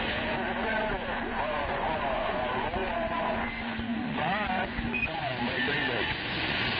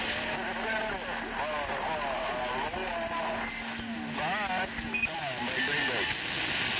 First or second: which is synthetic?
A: first